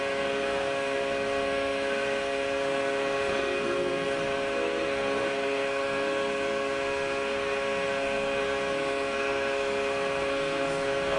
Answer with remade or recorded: remade